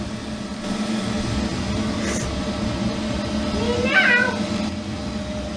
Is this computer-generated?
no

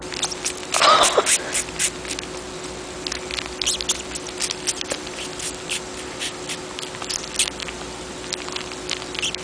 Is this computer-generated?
no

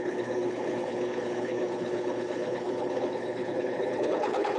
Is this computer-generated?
yes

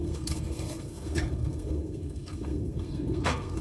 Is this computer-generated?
yes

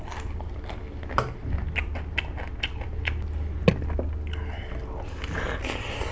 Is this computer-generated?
no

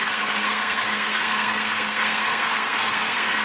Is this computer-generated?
yes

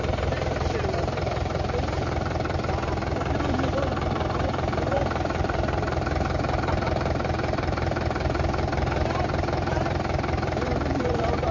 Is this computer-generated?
yes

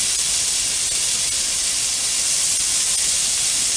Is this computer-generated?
no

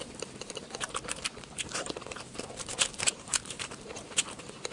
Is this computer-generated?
yes